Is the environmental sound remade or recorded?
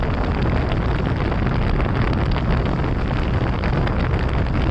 recorded